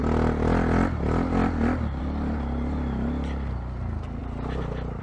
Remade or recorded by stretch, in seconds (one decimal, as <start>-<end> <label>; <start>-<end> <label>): 0.0-5.0 recorded